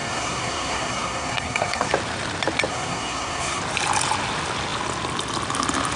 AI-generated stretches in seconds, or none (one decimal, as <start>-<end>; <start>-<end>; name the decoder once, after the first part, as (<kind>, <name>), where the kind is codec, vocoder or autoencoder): 0.0-1.9 (codec, SNAC); 2.7-3.6